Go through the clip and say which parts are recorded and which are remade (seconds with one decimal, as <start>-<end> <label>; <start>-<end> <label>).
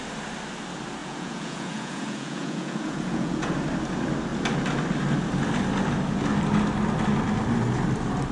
0.0-1.0 recorded; 1.0-3.5 remade; 3.5-8.3 recorded